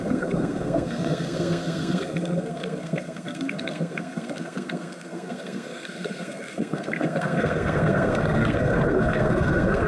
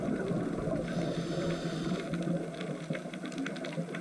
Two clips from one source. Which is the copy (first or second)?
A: first